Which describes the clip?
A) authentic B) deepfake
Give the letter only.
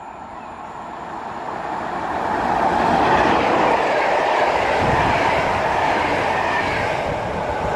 A